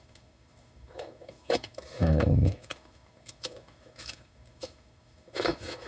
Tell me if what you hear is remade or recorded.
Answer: remade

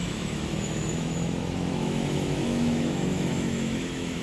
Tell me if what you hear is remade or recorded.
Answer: remade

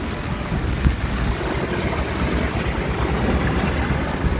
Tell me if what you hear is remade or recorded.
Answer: recorded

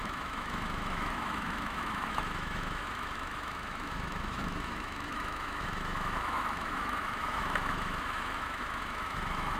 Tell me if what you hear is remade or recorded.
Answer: remade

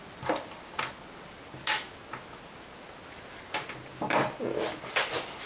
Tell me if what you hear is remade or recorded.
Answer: recorded